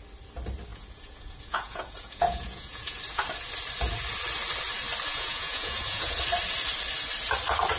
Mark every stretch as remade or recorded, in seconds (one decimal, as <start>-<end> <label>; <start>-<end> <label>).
0.0-0.7 recorded; 0.7-3.0 remade; 3.0-5.1 recorded; 5.1-6.2 remade; 6.2-7.8 recorded